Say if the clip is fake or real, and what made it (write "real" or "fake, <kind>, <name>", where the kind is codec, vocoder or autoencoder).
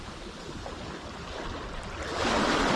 real